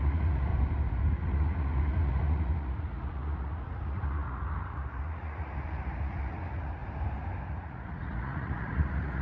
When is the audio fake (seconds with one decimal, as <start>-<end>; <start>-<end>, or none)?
0.0-0.5; 1.1-6.8; 7.5-9.2